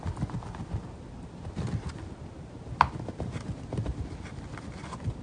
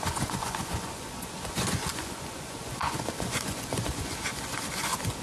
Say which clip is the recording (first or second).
first